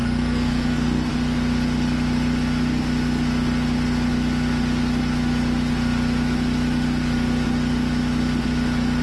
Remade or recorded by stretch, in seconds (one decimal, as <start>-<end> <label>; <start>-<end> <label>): 0.0-1.1 remade; 1.1-9.0 recorded